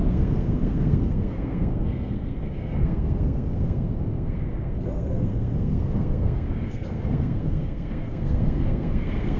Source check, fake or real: fake